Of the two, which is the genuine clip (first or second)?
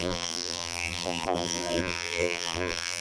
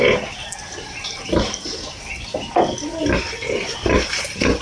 second